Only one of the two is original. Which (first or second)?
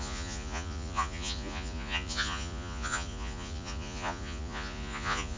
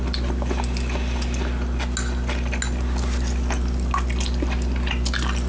second